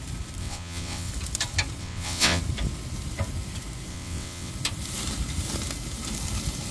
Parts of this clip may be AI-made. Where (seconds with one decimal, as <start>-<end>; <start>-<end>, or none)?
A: 0.4-1.1; 1.8-2.4; 3.9-4.5